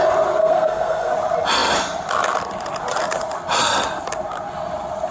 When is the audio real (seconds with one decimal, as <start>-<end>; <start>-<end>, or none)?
0.0-0.4; 1.1-5.1